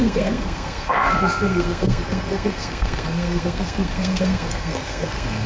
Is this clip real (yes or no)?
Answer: no